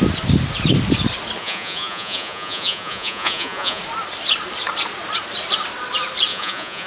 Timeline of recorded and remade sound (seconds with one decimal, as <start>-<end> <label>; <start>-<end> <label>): 0.0-1.4 recorded; 1.4-3.8 remade; 3.8-6.3 recorded; 6.3-6.9 remade